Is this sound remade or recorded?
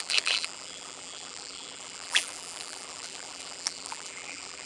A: remade